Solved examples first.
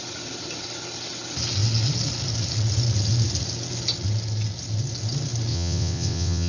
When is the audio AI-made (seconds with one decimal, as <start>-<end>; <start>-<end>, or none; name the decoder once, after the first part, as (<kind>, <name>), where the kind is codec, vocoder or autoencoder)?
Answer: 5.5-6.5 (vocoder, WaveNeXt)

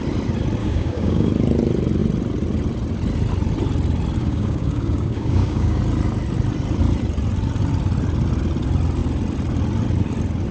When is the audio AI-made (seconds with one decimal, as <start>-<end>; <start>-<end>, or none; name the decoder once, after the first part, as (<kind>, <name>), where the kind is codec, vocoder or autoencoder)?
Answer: 0.6-1.3 (codec, DAC); 4.2-5.8

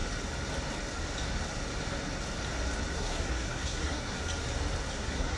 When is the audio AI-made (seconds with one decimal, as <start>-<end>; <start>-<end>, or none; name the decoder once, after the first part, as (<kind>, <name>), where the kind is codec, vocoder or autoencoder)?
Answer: 2.9-4.2 (codec, SNAC); 4.9-5.4

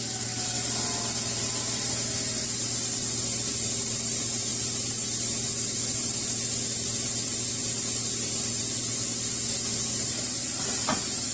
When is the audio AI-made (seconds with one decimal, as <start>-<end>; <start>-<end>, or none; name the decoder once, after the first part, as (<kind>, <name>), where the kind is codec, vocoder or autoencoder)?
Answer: none